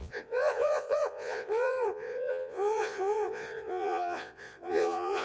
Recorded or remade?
remade